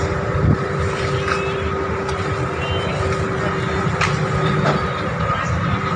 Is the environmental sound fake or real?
fake